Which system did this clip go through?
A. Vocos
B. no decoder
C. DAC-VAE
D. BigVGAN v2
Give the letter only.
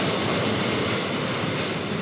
B